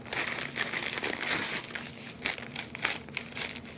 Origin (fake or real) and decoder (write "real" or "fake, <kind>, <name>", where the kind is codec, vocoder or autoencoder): real